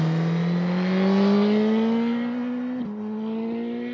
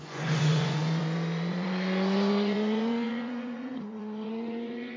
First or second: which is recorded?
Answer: first